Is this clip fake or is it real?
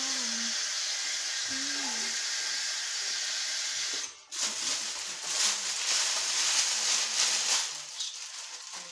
real